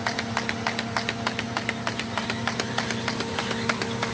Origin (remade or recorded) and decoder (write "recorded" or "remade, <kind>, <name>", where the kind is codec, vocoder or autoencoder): recorded